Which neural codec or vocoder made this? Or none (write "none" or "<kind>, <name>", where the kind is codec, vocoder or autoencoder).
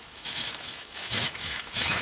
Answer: autoencoder, DAC-VAE